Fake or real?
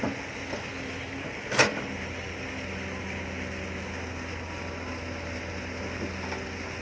real